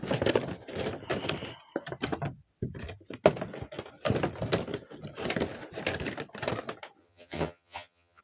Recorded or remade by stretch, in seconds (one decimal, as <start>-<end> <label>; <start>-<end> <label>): 0.0-7.0 recorded; 7.0-8.2 remade